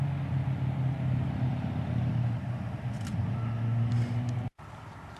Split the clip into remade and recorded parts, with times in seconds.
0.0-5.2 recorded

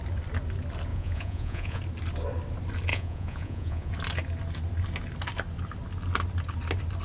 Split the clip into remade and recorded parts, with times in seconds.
0.0-0.9 recorded; 0.9-1.8 remade; 1.8-2.9 recorded; 2.9-3.9 remade; 3.9-7.0 recorded

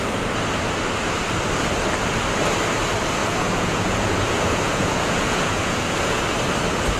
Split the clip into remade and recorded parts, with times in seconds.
0.0-3.2 recorded; 3.2-6.2 remade; 6.2-7.0 recorded